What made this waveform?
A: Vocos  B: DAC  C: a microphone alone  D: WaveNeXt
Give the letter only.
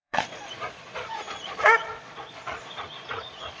A